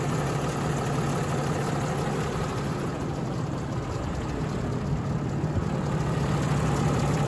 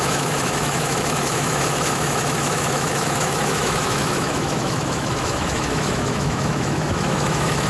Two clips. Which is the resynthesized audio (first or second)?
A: second